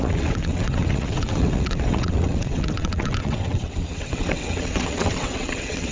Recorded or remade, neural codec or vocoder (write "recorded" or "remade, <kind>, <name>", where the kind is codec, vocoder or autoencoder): remade, vocoder, WaveNeXt